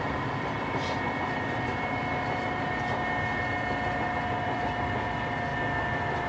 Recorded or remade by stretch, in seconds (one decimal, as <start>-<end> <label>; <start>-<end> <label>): 0.0-6.3 recorded